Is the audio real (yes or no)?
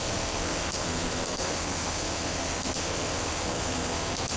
no